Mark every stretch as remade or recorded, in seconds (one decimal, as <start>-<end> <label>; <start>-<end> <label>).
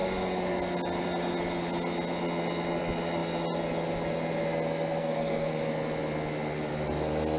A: 0.0-5.0 recorded; 5.0-5.6 remade; 5.6-7.4 recorded